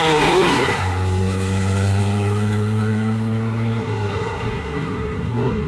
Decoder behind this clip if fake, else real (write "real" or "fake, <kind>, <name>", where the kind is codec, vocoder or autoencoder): fake, codec, SNAC